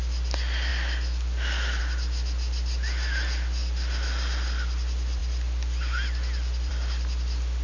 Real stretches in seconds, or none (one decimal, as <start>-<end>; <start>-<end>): 0.0-7.6